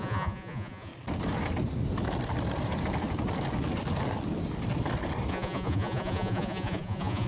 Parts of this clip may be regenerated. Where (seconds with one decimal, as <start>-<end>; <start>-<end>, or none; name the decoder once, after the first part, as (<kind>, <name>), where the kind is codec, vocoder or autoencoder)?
0.0-0.9 (vocoder, Vocos); 5.3-7.3